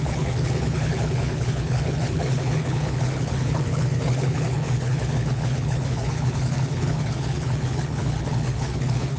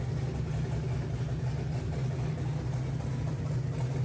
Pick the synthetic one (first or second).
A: first